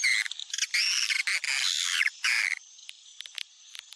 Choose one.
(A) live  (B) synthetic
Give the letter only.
A